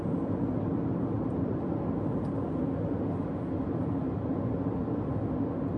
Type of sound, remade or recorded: recorded